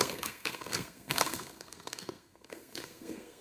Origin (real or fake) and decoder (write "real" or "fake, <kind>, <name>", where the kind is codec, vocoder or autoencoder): fake, codec, SNAC